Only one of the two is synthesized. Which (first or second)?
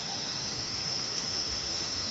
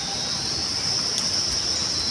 first